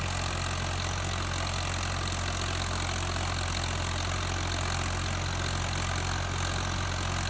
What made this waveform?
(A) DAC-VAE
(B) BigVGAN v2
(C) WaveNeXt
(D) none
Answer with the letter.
D